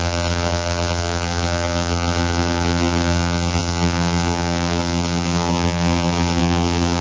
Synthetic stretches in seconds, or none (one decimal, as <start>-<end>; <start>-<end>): 0.0-7.0